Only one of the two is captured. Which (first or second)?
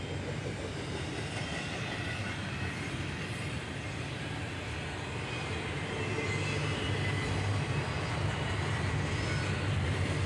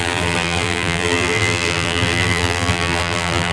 first